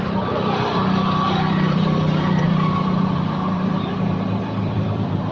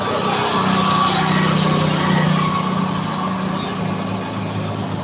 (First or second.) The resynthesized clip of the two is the first